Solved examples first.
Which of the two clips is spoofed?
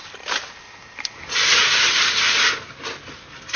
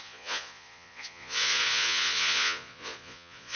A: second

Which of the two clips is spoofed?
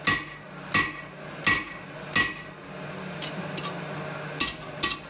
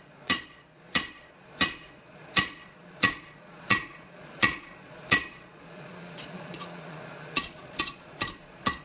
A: second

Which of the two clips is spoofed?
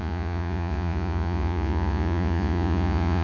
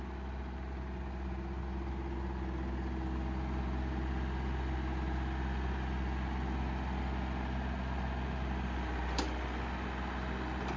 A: first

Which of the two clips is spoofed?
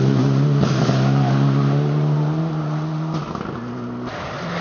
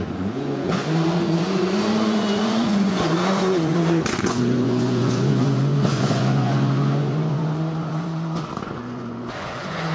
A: second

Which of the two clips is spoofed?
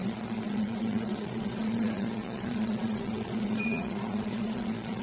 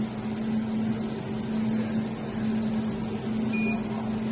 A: first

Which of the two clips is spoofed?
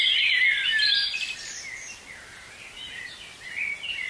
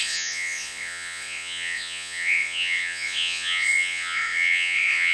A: second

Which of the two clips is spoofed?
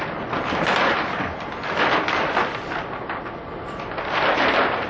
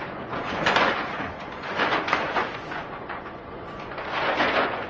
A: second